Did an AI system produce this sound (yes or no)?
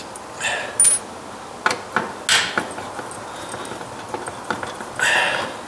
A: no